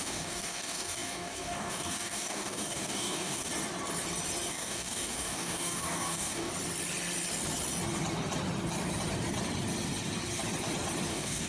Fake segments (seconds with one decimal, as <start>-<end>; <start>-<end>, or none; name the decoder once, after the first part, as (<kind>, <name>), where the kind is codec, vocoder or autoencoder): 0.0-3.5 (codec, DAC); 4.5-6.5; 11.1-11.5